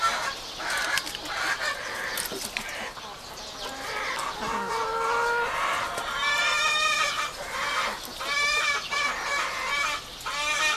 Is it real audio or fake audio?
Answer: real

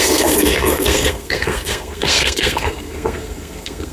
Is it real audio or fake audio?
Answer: fake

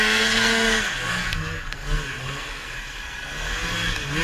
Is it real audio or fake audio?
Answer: fake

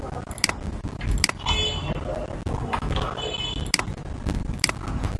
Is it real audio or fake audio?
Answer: real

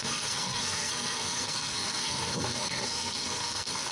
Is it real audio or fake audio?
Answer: fake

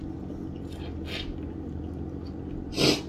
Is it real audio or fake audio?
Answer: real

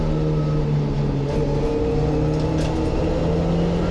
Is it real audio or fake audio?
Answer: real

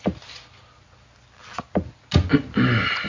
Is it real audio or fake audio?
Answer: real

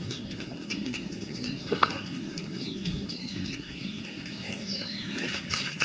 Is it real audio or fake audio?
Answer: fake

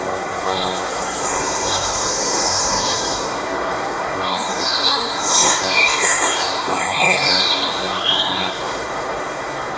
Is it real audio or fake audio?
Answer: fake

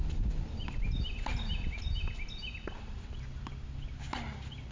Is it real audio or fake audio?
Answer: real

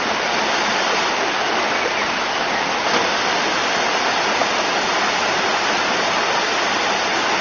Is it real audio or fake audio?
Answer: real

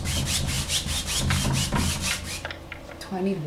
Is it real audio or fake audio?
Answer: real